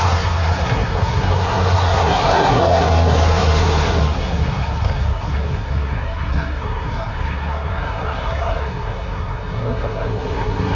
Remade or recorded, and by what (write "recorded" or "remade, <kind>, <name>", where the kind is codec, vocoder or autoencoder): remade, codec, SNAC